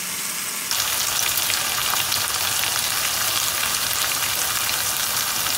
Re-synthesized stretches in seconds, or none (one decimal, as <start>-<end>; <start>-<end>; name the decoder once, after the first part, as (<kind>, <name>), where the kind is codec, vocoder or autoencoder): 1.8-2.3 (vocoder, BigVGAN v2); 3.6-4.3